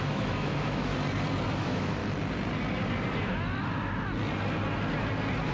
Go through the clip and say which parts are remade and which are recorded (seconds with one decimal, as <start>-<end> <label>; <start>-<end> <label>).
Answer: 0.0-0.9 remade; 0.9-1.6 recorded; 1.6-2.0 remade; 2.0-5.5 recorded